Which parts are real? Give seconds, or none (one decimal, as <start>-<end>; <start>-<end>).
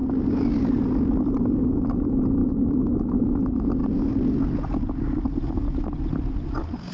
0.0-2.4; 3.4-6.9